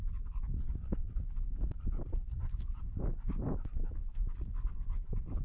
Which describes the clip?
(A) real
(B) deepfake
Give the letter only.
A